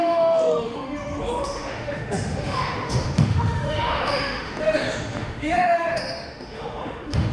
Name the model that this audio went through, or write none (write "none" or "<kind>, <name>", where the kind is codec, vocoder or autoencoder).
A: autoencoder, DAC-VAE